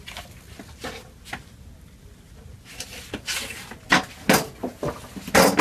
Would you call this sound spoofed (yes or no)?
no